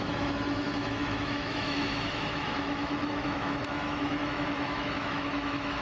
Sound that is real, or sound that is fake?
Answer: fake